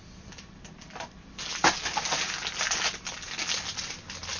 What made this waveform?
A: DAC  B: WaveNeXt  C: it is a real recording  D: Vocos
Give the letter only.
C